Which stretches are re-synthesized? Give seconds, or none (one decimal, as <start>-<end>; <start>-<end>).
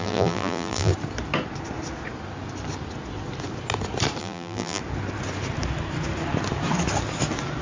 0.0-0.9; 4.2-4.8